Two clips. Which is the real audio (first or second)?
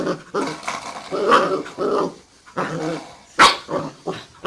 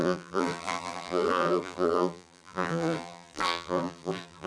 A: first